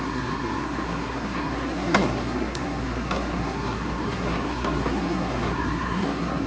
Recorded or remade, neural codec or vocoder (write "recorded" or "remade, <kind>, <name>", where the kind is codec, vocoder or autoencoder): remade, codec, SNAC